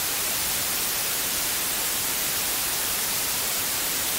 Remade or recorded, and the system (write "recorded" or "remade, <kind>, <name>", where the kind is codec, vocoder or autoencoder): remade, vocoder, BigVGAN v2